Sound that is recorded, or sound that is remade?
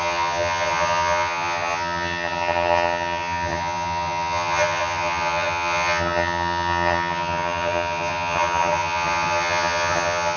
remade